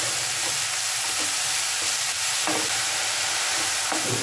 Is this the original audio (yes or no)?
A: yes